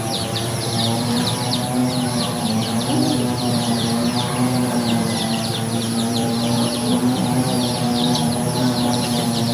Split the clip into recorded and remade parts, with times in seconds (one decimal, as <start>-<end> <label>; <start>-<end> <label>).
0.0-1.8 remade; 1.8-2.4 recorded; 2.4-9.5 remade